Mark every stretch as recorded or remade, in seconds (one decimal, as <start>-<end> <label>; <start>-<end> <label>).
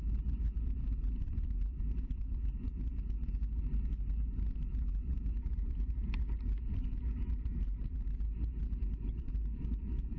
0.0-10.2 recorded